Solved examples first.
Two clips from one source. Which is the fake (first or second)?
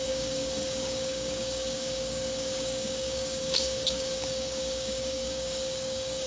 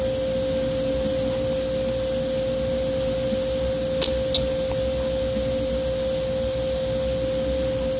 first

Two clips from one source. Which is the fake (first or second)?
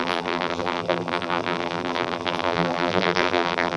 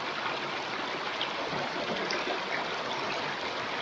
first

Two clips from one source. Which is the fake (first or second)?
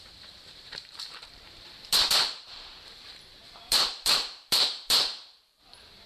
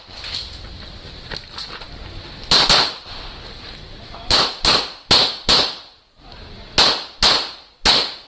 first